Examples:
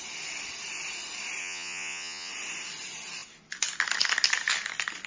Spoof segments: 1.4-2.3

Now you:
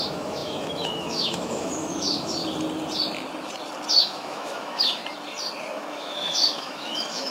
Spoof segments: 0.0-2.4; 3.9-5.0; 5.7-7.3

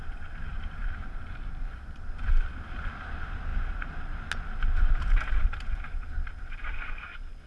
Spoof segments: 0.5-2.1

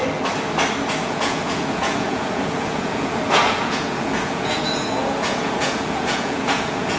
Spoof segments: 1.0-7.0

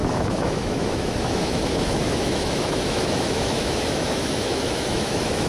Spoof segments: 0.0-5.5

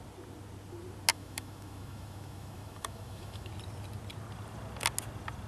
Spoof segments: 1.1-3.5